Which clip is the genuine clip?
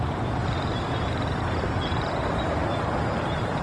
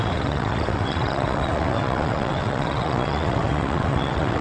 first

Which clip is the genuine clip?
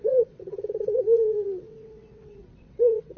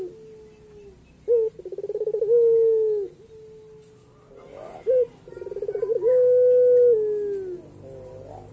second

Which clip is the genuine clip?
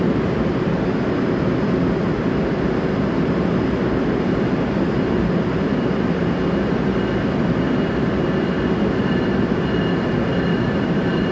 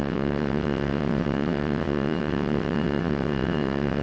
first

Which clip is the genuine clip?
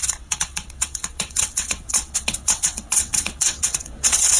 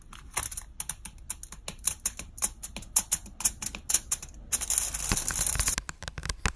second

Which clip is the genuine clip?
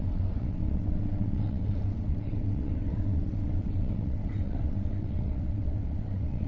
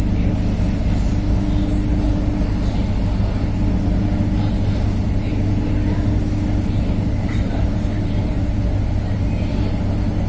second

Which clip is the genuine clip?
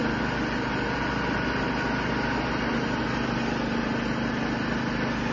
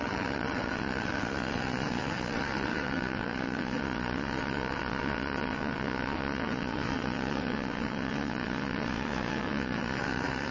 first